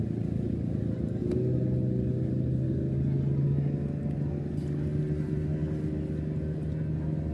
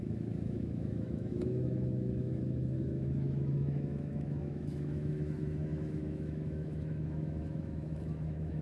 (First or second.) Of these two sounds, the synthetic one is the second